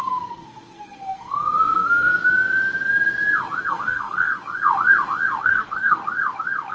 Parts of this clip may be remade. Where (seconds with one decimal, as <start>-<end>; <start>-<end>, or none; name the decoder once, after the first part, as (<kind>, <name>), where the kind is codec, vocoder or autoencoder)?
0.0-2.1 (codec, SNAC); 3.7-4.3; 5.4-6.0